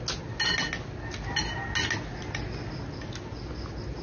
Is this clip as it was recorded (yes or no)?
yes